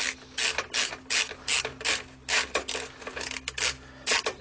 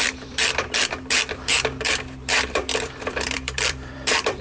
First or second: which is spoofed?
second